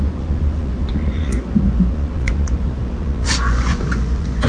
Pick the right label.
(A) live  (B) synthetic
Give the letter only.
B